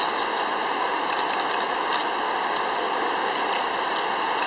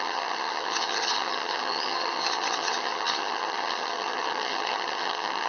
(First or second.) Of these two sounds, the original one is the first